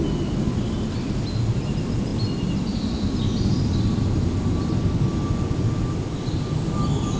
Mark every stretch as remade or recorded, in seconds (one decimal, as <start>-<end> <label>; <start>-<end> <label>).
0.0-7.2 recorded